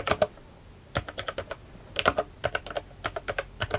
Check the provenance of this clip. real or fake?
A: real